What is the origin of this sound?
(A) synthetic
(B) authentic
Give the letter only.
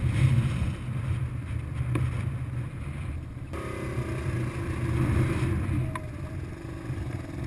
B